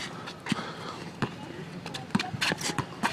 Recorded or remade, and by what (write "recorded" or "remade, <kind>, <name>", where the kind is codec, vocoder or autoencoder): recorded